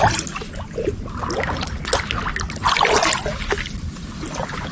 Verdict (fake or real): real